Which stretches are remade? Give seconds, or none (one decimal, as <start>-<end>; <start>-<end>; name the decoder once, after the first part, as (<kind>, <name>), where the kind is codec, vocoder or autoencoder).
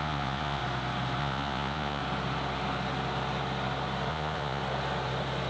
0.0-0.6 (vocoder, Vocos); 1.2-2.0; 4.1-4.6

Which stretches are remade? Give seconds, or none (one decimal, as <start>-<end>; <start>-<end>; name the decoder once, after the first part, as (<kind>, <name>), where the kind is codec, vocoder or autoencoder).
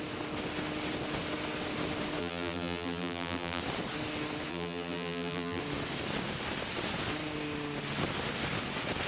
2.2-3.6 (vocoder, BigVGAN v2); 4.5-5.6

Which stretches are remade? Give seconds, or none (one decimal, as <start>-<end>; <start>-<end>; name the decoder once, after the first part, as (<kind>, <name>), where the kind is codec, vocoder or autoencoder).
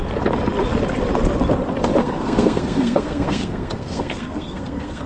2.0-5.1 (codec, SNAC)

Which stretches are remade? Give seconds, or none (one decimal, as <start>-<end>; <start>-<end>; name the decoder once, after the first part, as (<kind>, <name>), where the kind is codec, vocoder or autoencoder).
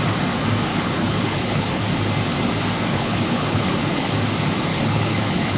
0.7-1.8 (codec, HILCodec); 2.9-4.1; 4.7-5.6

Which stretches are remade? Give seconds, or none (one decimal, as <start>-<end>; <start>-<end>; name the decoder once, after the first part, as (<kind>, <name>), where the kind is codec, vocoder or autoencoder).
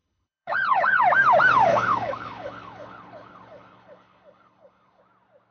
0.0-1.0 (codec, HILCodec); 1.7-5.0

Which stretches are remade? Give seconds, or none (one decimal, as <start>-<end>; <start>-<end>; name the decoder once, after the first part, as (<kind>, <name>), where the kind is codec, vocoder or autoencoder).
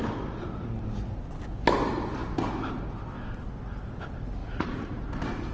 4.4-5.0 (vocoder, Vocos)